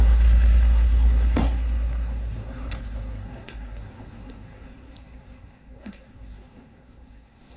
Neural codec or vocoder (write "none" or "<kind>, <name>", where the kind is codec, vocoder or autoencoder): codec, SNAC